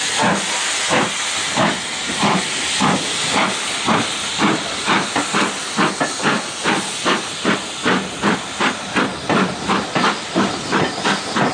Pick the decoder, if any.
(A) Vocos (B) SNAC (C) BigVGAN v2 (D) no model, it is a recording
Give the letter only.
D